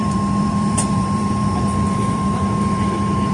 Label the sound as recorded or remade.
remade